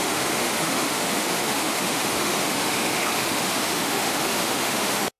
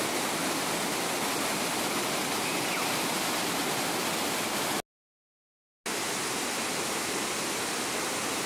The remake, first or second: first